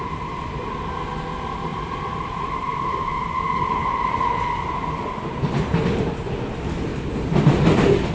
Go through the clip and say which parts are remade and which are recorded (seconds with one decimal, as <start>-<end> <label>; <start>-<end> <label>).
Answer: 0.0-1.7 recorded; 1.7-5.2 remade; 5.2-6.5 recorded; 6.5-7.6 remade; 7.6-8.1 recorded